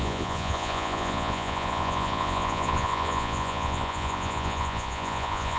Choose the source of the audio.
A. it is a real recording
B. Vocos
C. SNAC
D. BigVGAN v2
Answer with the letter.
B